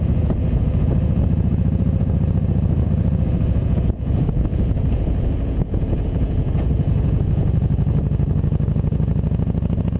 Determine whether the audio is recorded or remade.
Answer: remade